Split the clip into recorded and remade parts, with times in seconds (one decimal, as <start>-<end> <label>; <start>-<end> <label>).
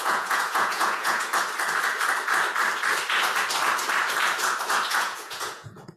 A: 0.0-1.3 remade; 1.3-4.9 recorded; 4.9-6.0 remade